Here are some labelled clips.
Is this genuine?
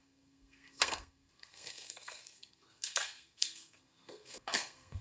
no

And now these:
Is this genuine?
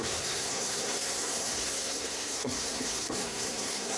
no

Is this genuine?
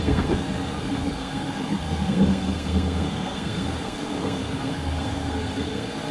no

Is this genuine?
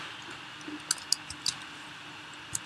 yes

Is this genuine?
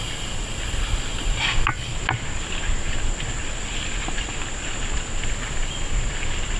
yes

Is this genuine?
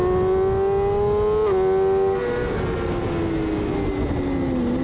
yes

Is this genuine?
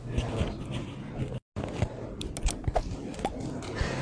yes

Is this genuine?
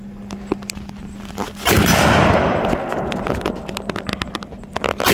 yes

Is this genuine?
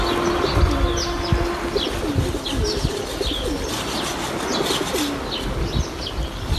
yes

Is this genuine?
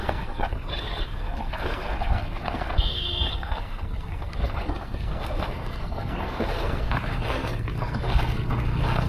no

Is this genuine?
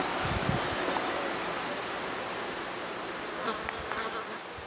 yes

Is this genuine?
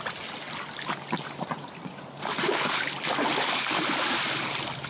yes